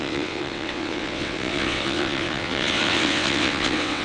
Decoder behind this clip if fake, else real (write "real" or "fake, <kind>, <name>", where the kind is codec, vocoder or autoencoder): fake, vocoder, WaveNeXt